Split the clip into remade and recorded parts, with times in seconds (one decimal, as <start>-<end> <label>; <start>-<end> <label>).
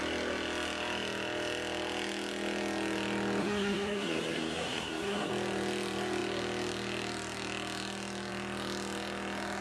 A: 0.0-3.4 recorded; 3.4-5.3 remade; 5.3-9.6 recorded